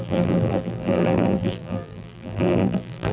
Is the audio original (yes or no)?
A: no